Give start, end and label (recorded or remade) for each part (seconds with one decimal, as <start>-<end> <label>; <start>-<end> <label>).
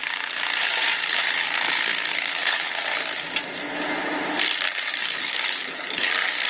0.0-2.1 recorded; 2.1-2.7 remade; 2.7-5.0 recorded; 5.0-6.1 remade; 6.1-6.5 recorded